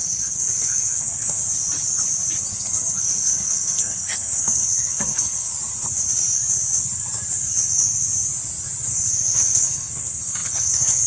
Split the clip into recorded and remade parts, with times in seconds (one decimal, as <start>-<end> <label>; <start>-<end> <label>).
0.0-1.4 remade; 1.4-2.5 recorded; 2.5-5.5 remade; 5.5-8.9 recorded; 8.9-11.1 remade